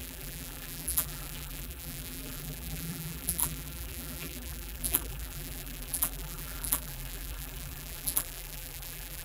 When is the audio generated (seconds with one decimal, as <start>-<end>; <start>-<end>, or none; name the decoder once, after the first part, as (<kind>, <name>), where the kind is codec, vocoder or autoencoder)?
0.0-9.2 (vocoder, BigVGAN v2)